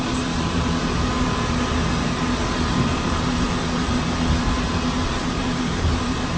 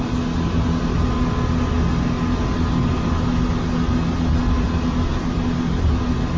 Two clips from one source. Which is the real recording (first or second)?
second